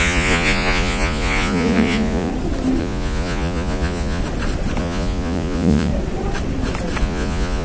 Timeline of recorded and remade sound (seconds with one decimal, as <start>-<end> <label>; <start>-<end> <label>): 0.0-2.3 remade; 2.3-2.8 recorded; 2.8-4.2 remade; 4.2-4.8 recorded; 4.8-5.9 remade; 5.9-7.0 recorded; 7.0-7.6 remade